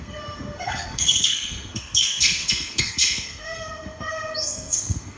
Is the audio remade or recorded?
remade